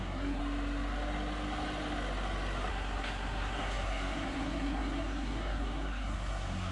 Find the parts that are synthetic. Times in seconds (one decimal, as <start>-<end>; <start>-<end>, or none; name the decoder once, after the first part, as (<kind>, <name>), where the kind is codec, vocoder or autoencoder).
0.0-0.4 (codec, SNAC); 2.7-6.7